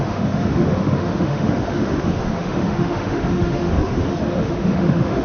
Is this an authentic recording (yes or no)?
no